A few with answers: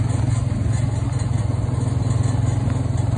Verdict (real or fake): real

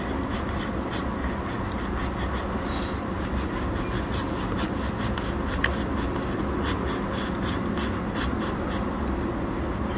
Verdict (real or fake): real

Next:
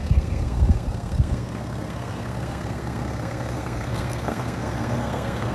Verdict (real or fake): fake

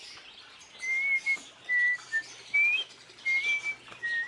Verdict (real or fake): real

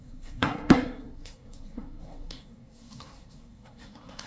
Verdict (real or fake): fake